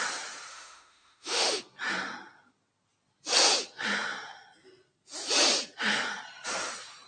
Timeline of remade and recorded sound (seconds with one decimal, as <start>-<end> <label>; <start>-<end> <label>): 0.0-0.5 recorded; 0.5-1.6 remade; 1.6-7.1 recorded